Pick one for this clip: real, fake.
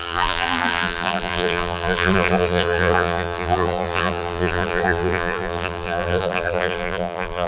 fake